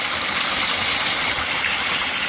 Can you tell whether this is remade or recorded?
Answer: recorded